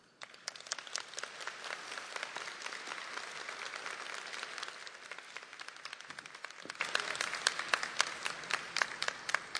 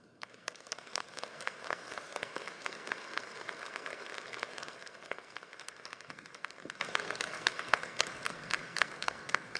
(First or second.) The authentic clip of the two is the first